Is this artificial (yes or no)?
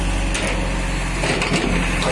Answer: no